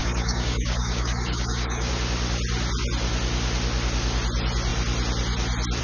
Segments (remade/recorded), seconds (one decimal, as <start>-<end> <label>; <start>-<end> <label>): 0.0-1.9 remade; 1.9-5.8 recorded